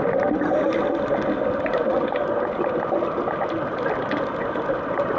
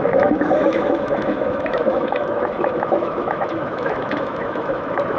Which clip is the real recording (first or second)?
first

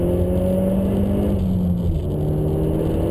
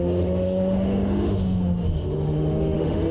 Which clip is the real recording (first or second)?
first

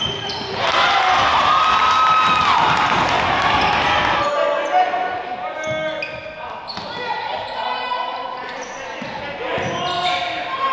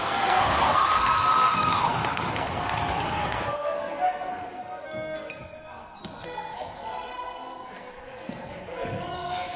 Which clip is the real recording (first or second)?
first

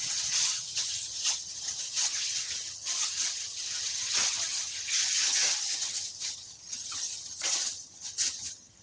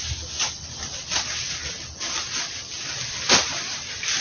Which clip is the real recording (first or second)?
second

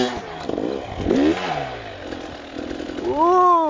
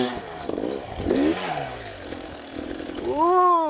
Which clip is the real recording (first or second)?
first